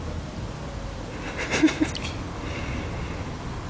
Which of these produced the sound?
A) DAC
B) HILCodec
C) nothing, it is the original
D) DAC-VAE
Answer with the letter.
C